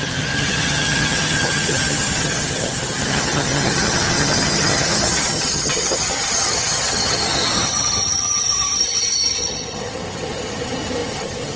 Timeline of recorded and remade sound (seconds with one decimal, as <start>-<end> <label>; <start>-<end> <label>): 0.0-11.6 remade